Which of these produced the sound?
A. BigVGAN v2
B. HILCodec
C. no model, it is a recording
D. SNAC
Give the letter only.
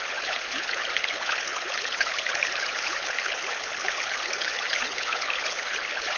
B